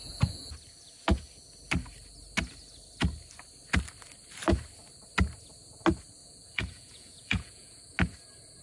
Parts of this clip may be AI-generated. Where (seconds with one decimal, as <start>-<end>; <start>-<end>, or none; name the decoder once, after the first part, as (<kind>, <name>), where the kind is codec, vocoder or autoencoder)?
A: 0.0-0.5 (vocoder, Vocos); 6.2-7.8